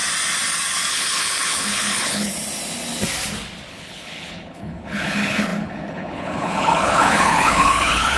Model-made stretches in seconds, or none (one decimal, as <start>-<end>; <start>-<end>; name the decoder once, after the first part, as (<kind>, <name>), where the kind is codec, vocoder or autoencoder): 0.9-2.3 (codec, HILCodec); 3.7-8.2